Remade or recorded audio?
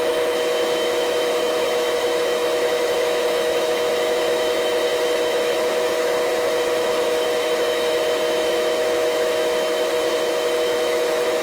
remade